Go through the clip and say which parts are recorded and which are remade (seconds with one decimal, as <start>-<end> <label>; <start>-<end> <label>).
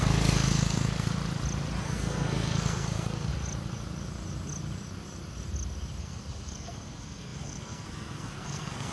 0.0-1.2 remade; 1.2-1.8 recorded; 1.8-3.3 remade; 3.3-6.0 recorded; 6.0-8.9 remade